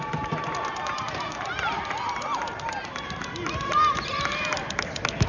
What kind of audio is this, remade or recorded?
recorded